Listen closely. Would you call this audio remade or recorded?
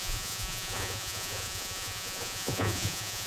remade